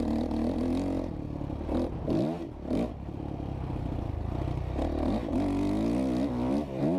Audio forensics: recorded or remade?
recorded